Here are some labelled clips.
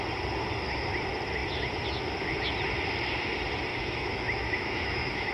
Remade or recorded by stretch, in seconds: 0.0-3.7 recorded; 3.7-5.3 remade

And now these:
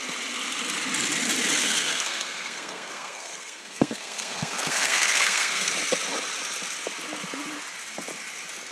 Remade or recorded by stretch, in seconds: 0.0-1.6 recorded; 1.6-5.7 remade; 5.7-8.7 recorded

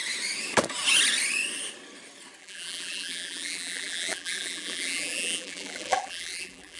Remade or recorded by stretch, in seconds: 0.0-2.4 recorded; 2.4-6.8 remade

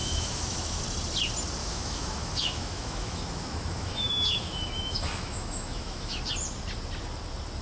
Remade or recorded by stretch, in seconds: 0.0-0.8 remade; 0.8-1.6 recorded; 1.6-6.2 remade; 6.2-7.6 recorded

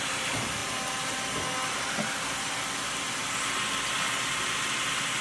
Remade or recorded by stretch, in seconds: 0.0-5.2 recorded

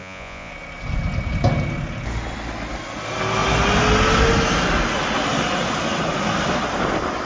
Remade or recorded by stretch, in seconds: 0.0-0.5 remade; 0.5-7.3 recorded

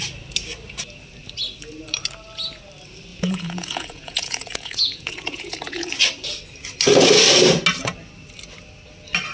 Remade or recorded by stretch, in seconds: 0.0-3.1 recorded; 3.1-5.9 remade; 5.9-9.3 recorded